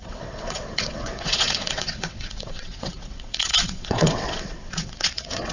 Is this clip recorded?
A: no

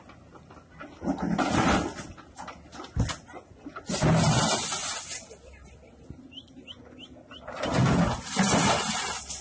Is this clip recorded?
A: yes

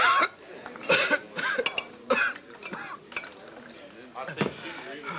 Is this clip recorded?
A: yes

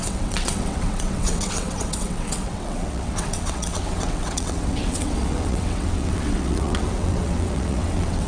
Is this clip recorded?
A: no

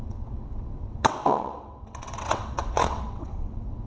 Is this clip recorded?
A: no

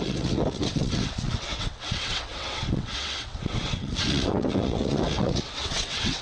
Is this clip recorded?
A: no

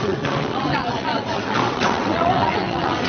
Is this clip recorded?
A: no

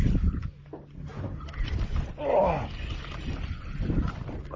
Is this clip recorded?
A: yes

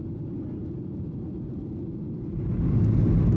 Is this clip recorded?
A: yes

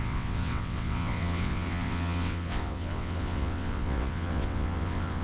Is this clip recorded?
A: no